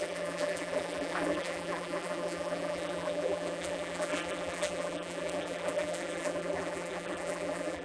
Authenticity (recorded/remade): remade